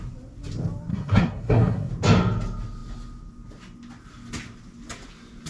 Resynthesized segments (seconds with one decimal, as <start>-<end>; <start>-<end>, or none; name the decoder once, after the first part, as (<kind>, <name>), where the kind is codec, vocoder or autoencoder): 0.9-1.9 (codec, SNAC)

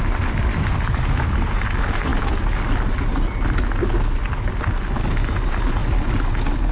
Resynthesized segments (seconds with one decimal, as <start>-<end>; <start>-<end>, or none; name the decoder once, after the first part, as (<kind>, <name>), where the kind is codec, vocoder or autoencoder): none